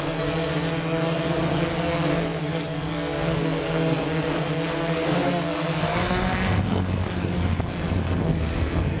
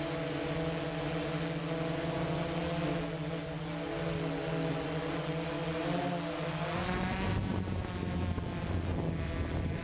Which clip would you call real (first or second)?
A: second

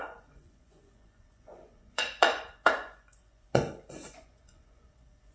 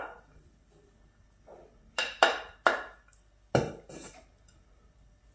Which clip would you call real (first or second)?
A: second